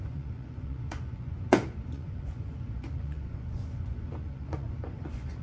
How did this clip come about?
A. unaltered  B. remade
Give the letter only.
B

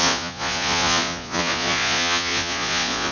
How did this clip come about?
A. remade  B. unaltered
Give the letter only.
A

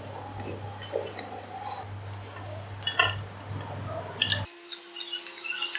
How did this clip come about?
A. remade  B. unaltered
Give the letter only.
B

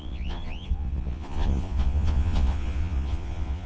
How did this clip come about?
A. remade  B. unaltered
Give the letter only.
A